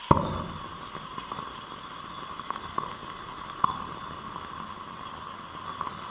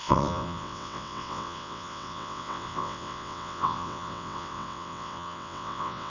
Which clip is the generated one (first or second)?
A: second